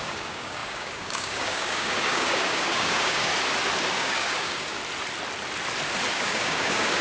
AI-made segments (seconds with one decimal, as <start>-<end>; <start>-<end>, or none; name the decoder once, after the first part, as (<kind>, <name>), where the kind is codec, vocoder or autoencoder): 0.0-3.3 (codec, DAC); 3.9-4.8; 6.1-7.0